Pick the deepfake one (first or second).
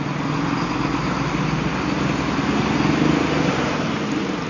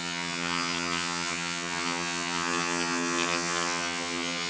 second